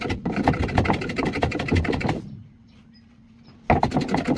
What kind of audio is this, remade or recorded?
recorded